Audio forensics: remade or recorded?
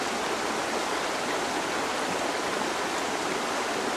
recorded